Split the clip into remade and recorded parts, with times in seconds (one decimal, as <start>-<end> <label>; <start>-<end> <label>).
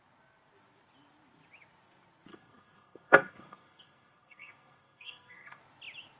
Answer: 0.0-2.3 recorded; 2.3-5.6 remade; 5.6-6.2 recorded